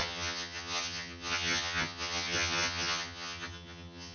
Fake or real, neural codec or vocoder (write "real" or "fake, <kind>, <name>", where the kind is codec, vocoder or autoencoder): fake, vocoder, HiFi-GAN